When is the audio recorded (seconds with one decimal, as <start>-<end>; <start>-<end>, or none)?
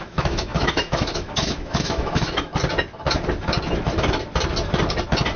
2.5-5.4